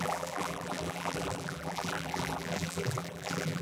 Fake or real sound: fake